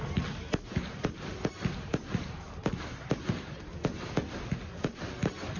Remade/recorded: recorded